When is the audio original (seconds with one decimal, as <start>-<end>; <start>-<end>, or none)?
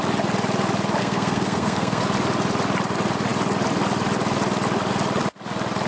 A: 0.0-1.0; 2.0-5.9